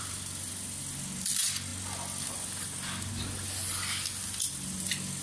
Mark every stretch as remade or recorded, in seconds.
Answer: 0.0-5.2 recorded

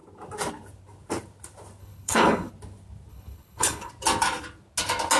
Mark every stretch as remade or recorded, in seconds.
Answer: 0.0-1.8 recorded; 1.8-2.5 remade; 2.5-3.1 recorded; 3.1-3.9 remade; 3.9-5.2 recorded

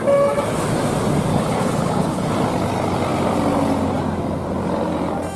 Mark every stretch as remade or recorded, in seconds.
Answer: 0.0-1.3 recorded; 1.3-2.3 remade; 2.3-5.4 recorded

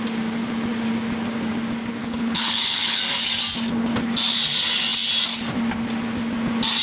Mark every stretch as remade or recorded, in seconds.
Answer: 0.0-2.0 recorded; 2.0-3.0 remade; 3.0-6.8 recorded

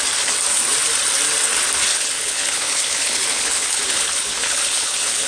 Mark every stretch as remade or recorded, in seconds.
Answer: 0.0-1.9 recorded; 1.9-5.3 remade

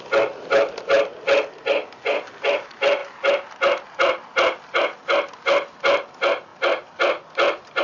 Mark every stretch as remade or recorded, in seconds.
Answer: 0.0-7.8 recorded